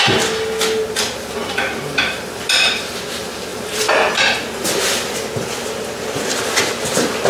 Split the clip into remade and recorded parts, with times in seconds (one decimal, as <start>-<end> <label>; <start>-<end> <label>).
0.0-1.4 recorded; 1.4-2.9 remade; 2.9-3.5 recorded; 3.5-4.1 remade; 4.1-7.3 recorded

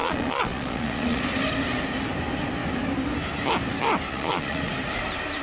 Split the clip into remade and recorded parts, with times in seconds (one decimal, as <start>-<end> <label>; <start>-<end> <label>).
0.0-1.2 remade; 1.2-4.1 recorded; 4.1-4.7 remade; 4.7-5.4 recorded

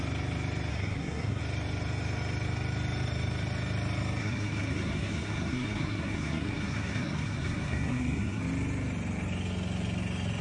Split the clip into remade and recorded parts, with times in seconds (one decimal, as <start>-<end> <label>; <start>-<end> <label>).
0.0-0.7 recorded; 0.7-1.4 remade; 1.4-4.2 recorded; 4.2-8.4 remade; 8.4-10.4 recorded

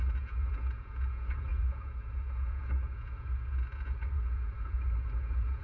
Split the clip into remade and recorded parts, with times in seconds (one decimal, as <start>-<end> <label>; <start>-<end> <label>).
0.0-5.6 remade

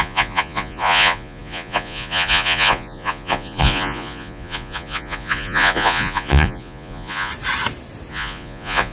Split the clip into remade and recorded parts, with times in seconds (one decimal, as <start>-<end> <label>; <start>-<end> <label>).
0.0-7.3 remade; 7.3-8.1 recorded; 8.1-8.9 remade

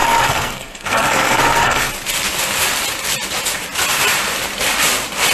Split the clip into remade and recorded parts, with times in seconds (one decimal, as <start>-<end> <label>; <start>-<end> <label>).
0.0-1.9 remade; 1.9-5.3 recorded